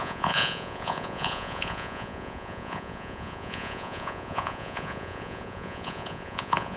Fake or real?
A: fake